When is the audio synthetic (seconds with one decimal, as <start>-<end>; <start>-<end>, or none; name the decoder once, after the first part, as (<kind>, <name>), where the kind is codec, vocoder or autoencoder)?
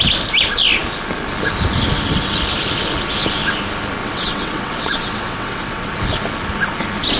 4.0-5.9 (vocoder, WaveNeXt)